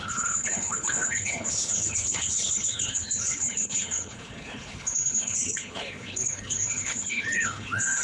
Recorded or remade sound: remade